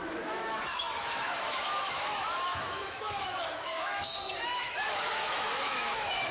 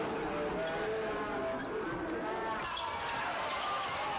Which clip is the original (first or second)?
second